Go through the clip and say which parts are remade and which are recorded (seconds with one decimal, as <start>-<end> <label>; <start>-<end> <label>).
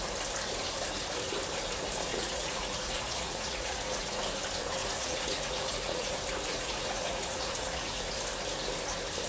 0.0-2.1 recorded; 2.1-4.2 remade; 4.2-4.8 recorded; 4.8-6.1 remade; 6.1-6.5 recorded; 6.5-8.0 remade; 8.0-9.3 recorded